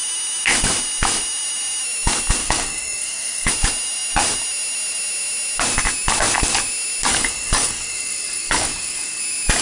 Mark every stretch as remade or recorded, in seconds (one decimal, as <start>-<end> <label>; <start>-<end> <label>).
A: 0.0-2.4 recorded; 2.4-3.5 remade; 3.5-7.1 recorded; 7.1-9.2 remade; 9.2-9.6 recorded